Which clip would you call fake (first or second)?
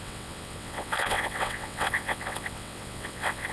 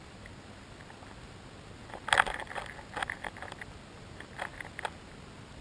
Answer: first